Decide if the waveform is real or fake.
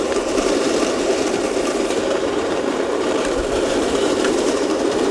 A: fake